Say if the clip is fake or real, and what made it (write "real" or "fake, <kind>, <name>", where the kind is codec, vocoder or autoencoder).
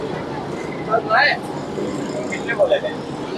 real